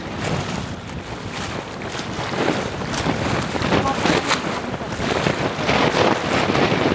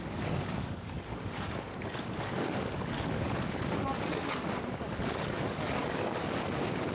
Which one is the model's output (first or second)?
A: second